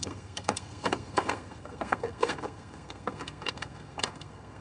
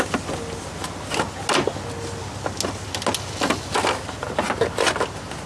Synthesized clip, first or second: first